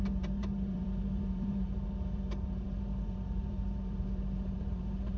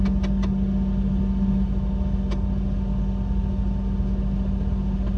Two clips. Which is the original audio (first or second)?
second